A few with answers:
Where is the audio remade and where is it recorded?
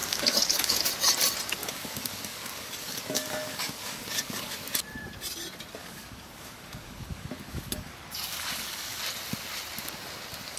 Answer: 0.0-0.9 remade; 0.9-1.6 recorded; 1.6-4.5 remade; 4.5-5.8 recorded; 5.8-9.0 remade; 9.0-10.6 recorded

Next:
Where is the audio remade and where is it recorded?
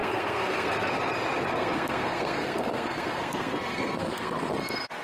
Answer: 0.0-0.9 remade; 0.9-1.5 recorded; 1.5-4.5 remade; 4.5-5.0 recorded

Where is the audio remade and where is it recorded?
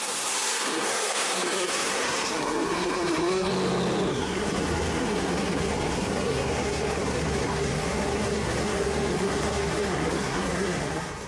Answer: 0.0-3.5 remade; 3.5-4.1 recorded; 4.1-11.3 remade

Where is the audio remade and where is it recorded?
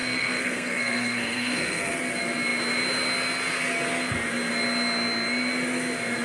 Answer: 0.0-2.0 remade; 2.0-6.2 recorded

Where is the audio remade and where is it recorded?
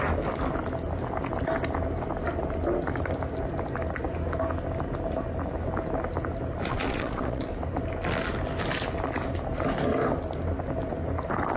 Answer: 0.0-6.7 recorded; 6.7-7.5 remade; 7.5-11.6 recorded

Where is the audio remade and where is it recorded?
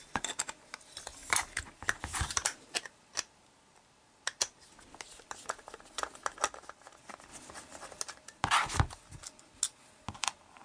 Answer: 0.0-10.6 recorded